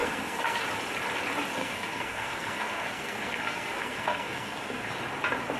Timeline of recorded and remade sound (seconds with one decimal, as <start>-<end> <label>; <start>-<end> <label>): 0.0-0.6 remade; 0.6-1.6 recorded; 1.6-4.9 remade; 4.9-5.6 recorded